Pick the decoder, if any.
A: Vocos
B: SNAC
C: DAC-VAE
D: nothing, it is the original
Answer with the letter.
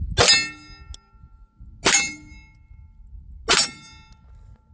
D